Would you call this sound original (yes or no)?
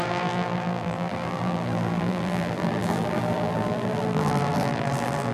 no